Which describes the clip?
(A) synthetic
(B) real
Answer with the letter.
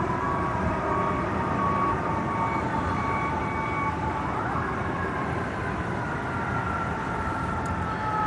B